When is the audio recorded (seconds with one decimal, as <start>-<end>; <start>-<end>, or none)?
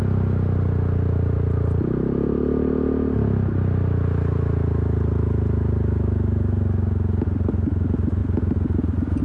0.0-9.2